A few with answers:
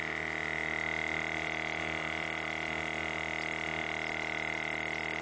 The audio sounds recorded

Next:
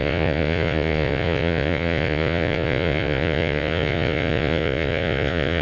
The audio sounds remade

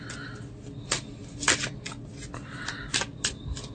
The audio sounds recorded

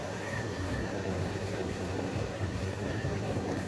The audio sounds remade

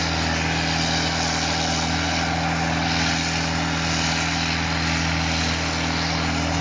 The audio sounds recorded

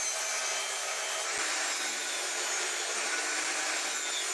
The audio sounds recorded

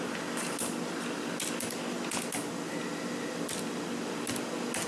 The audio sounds recorded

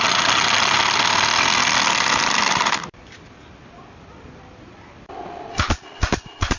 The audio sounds recorded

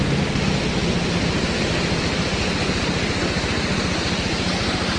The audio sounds recorded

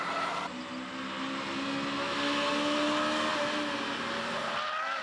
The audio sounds recorded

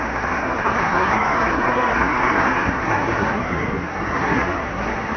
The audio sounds remade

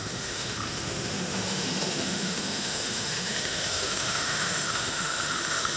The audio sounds remade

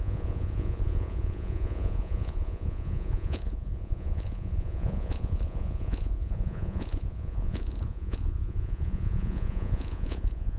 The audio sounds remade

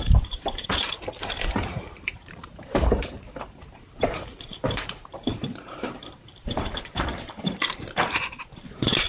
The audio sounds remade